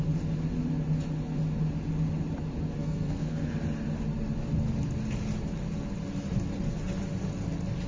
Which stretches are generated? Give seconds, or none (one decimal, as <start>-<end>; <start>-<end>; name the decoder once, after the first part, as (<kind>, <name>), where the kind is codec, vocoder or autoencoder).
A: 2.8-3.5 (codec, SNAC)